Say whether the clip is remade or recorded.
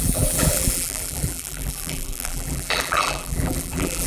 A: remade